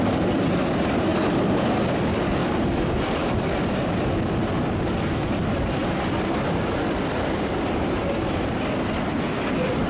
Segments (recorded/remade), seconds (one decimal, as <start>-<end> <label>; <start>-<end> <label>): 0.0-1.1 recorded; 1.1-1.7 remade; 1.7-2.4 recorded; 2.4-4.3 remade; 4.3-5.8 recorded; 5.8-8.0 remade; 8.0-9.9 recorded

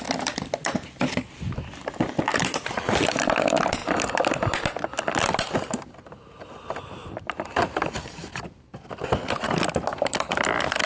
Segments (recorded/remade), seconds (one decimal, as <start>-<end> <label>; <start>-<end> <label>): 0.0-3.8 remade; 3.8-6.5 recorded; 6.5-8.3 remade; 8.3-10.1 recorded; 10.1-10.9 remade

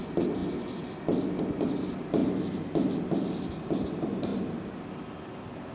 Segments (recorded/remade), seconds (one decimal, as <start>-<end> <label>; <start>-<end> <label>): 0.0-5.7 recorded

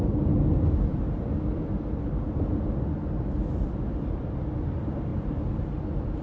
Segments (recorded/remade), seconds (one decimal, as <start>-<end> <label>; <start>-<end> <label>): 0.0-0.9 recorded; 0.9-4.6 remade; 4.6-6.2 recorded

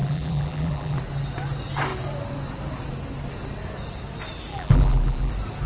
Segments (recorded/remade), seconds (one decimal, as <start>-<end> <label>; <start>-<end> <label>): 0.0-1.0 remade; 1.0-4.5 recorded; 4.5-5.3 remade; 5.3-5.7 recorded

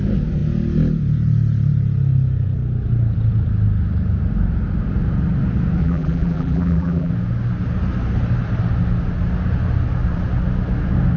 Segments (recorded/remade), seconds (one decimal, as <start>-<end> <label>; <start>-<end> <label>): 0.0-5.8 recorded; 5.8-7.1 remade; 7.1-11.2 recorded